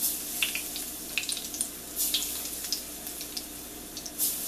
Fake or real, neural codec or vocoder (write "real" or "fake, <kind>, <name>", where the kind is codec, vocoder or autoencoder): real